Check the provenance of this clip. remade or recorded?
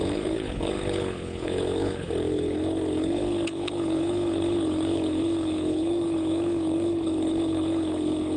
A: remade